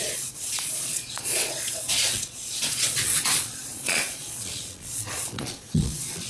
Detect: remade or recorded remade